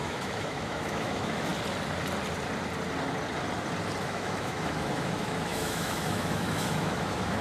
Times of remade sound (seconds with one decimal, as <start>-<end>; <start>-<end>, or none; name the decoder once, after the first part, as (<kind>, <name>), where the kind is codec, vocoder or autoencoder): 0.0-1.5 (autoencoder, DAC-VAE); 4.0-7.4